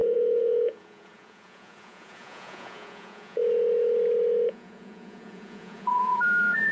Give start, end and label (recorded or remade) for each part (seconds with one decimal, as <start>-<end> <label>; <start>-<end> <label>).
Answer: 0.0-3.4 remade; 3.4-4.5 recorded; 4.5-6.7 remade